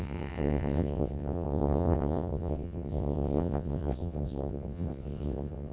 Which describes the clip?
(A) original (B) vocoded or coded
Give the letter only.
B